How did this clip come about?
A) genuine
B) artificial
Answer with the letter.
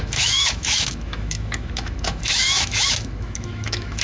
B